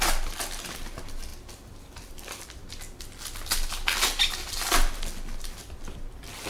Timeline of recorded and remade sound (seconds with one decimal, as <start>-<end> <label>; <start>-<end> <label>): 0.0-1.3 recorded; 1.3-2.7 remade; 2.7-6.5 recorded